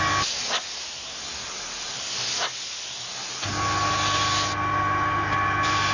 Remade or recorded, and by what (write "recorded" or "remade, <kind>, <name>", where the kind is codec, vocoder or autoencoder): recorded